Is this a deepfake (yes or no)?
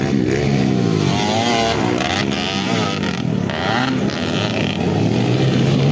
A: no